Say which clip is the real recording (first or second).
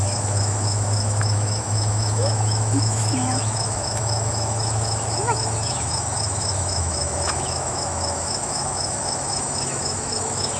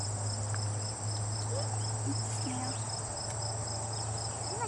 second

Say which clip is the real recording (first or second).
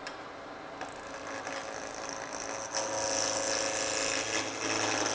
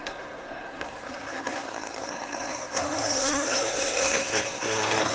first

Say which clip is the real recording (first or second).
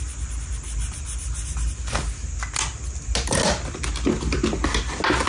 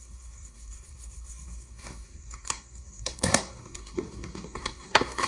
first